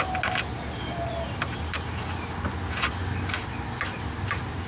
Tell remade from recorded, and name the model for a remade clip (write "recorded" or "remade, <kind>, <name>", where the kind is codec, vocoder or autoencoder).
recorded